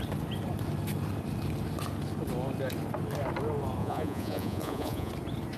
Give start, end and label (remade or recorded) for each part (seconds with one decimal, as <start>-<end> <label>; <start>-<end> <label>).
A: 0.0-3.8 recorded; 3.8-5.1 remade; 5.1-5.6 recorded